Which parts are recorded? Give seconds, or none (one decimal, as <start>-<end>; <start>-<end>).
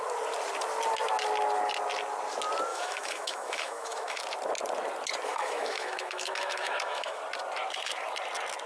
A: 0.0-2.7; 4.2-5.3; 7.2-8.7